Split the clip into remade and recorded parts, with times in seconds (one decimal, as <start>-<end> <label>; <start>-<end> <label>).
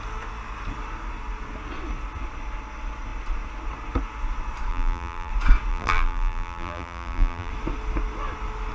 0.0-4.7 recorded; 4.7-5.3 remade; 5.3-5.7 recorded; 5.7-7.5 remade; 7.5-8.7 recorded